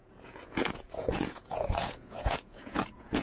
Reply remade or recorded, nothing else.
remade